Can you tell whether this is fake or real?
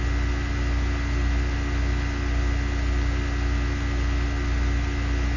real